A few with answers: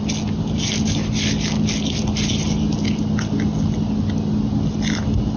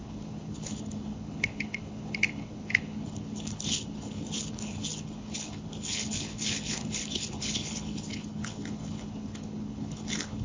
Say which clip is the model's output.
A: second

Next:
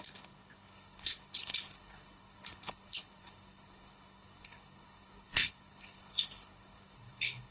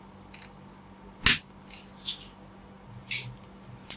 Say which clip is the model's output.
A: first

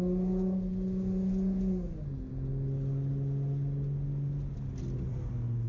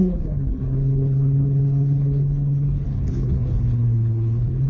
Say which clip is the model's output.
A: second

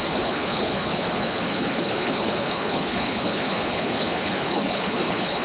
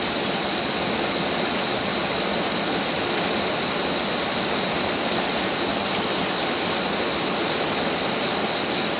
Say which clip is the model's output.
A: first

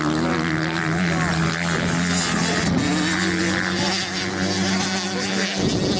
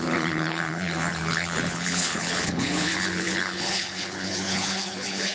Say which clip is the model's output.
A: second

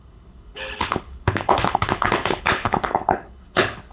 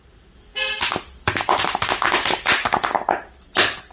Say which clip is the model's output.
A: first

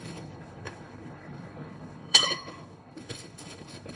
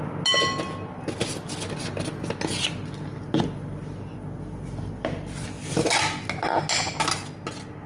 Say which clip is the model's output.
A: first